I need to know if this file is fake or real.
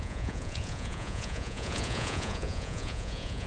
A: fake